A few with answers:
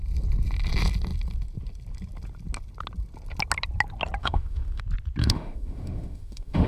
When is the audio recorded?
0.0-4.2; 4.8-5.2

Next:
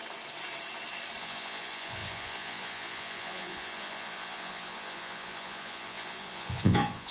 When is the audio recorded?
0.0-1.2

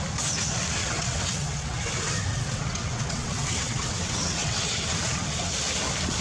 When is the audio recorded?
0.0-0.8; 1.9-2.3; 5.5-6.2

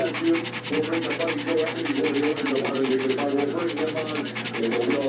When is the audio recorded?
0.0-2.3; 2.9-5.1

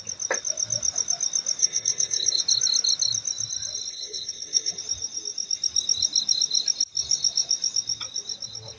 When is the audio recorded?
0.0-1.6; 2.4-3.9; 4.8-8.8

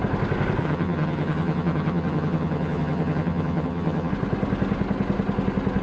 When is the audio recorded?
0.0-0.6; 4.1-5.8

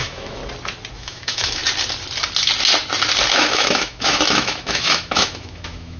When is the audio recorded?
0.4-0.9; 1.6-3.3

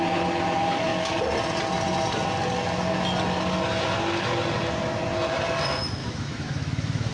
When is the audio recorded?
0.0-6.0